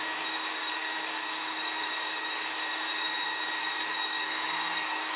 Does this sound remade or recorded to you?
remade